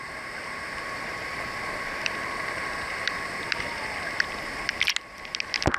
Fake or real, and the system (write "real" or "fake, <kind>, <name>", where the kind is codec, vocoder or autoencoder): real